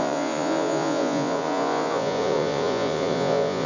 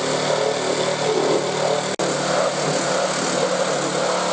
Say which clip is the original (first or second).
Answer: second